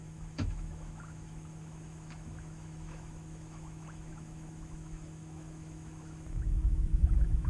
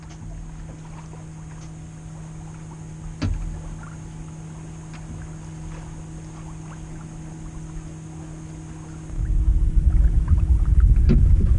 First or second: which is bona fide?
second